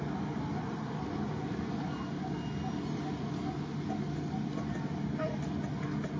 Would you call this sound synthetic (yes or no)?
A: no